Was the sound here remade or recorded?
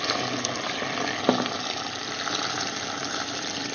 recorded